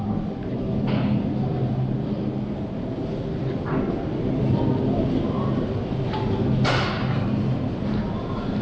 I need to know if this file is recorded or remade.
recorded